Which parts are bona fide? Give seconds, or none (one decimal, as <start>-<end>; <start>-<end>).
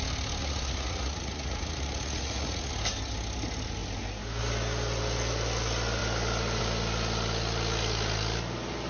0.0-0.4; 2.7-8.9